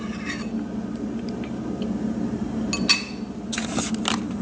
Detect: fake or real real